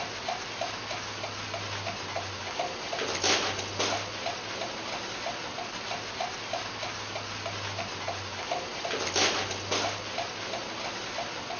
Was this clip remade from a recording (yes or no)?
no